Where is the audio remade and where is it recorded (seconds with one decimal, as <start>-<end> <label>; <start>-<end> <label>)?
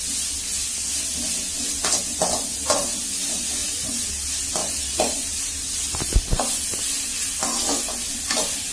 0.0-3.6 recorded; 3.6-4.1 remade; 4.1-4.6 recorded; 4.6-6.4 remade; 6.4-8.7 recorded